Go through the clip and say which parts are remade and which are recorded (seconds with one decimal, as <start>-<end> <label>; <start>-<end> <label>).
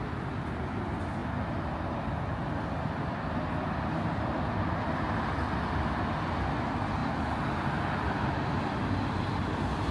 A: 0.0-9.9 recorded